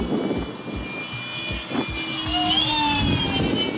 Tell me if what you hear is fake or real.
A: real